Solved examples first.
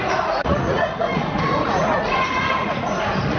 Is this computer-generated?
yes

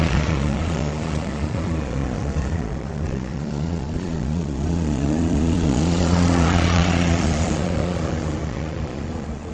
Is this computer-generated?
yes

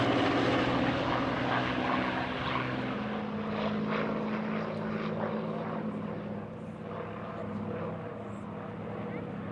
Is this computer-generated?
no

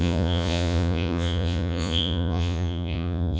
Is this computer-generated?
yes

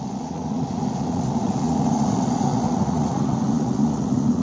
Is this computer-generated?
yes